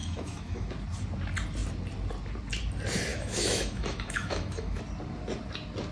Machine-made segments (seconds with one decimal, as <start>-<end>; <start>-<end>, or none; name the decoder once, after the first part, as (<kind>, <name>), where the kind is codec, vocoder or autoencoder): 0.0-0.7 (autoencoder, DAC-VAE); 3.1-4.8